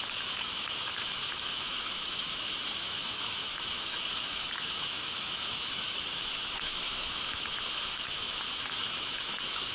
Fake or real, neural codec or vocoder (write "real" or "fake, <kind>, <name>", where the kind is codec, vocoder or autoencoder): fake, autoencoder, DAC-VAE